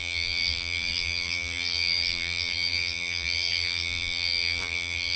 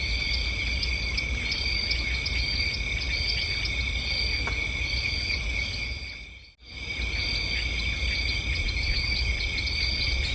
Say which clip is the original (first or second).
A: second